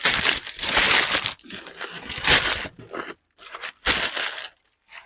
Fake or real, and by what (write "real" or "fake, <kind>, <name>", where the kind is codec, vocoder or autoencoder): real